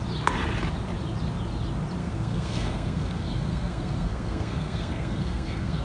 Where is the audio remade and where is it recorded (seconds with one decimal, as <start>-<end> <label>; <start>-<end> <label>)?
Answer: 0.0-2.0 recorded; 2.0-5.8 remade